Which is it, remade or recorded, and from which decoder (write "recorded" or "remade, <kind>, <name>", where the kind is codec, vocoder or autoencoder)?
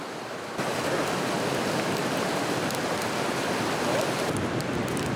recorded